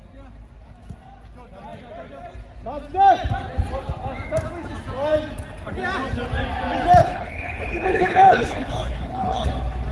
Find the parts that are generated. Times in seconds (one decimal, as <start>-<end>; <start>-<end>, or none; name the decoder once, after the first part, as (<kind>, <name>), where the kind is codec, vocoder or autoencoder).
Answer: 7.0-9.5 (codec, HILCodec)